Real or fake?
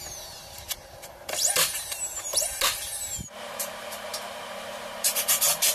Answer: fake